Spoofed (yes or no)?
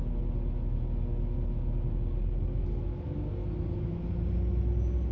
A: no